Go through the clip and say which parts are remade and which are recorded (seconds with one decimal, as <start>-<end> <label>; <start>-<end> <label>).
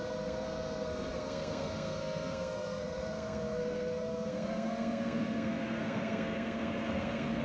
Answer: 0.0-7.4 remade